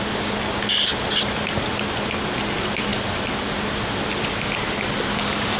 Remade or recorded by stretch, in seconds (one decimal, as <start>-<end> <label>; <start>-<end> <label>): 0.0-5.6 recorded